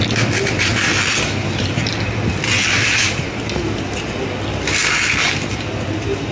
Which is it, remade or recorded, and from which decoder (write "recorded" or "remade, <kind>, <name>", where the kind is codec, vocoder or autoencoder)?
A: recorded